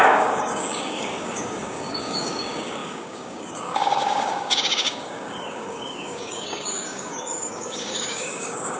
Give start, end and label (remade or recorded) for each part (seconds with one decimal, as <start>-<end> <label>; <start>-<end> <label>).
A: 0.0-8.8 remade